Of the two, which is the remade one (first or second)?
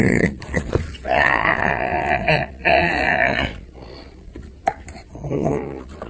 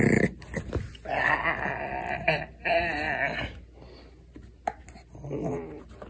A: first